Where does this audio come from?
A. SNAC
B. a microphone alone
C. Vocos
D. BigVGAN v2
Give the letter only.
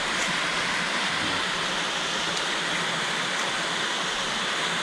B